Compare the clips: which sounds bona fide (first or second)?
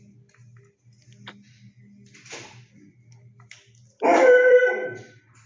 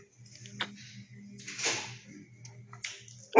second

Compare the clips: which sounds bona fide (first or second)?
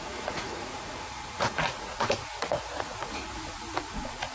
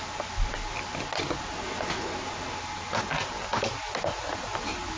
second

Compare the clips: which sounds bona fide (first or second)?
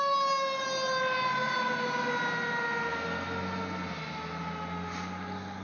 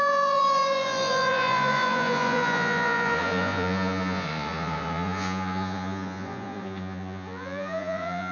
first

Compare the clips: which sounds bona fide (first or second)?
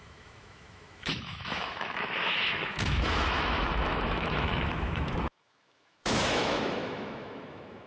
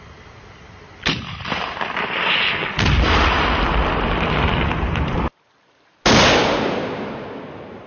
second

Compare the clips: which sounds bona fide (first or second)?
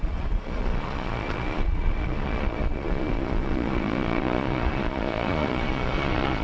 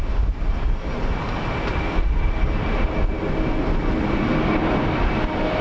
second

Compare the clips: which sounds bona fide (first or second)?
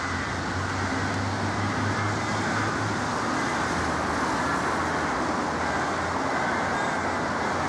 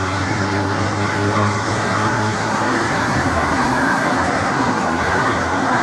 first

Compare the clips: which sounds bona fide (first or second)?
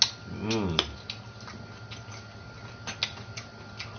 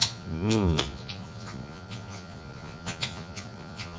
first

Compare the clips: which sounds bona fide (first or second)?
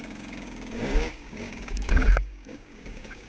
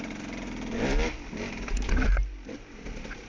second